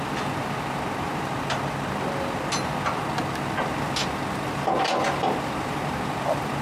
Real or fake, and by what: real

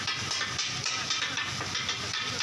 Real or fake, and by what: real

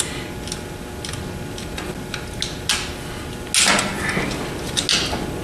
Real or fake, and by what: real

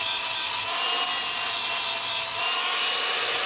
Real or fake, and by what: real